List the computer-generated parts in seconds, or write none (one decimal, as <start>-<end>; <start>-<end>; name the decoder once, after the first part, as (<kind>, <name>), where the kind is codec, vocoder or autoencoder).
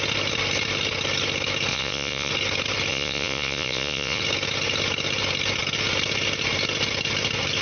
1.7-2.3 (vocoder, Vocos); 2.9-4.2